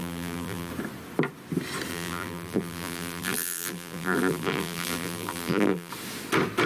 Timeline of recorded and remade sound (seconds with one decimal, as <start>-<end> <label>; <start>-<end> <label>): 0.0-0.7 remade; 0.7-1.9 recorded; 1.9-5.9 remade; 5.9-6.7 recorded